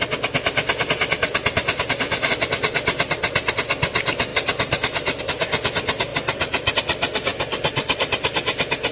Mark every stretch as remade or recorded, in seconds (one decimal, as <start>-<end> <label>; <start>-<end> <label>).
0.0-1.3 recorded; 1.3-3.5 remade; 3.5-4.3 recorded; 4.3-5.2 remade; 5.2-8.9 recorded